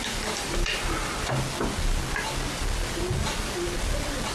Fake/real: real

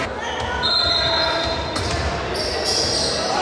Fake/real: real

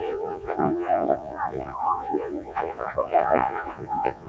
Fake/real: fake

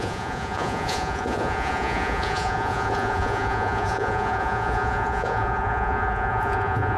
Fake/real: fake